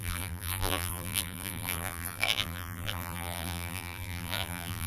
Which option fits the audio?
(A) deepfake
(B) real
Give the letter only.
A